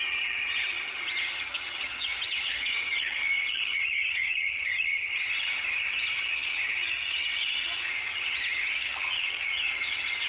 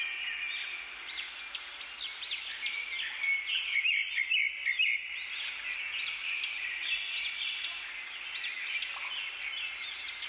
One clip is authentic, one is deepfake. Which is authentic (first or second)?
second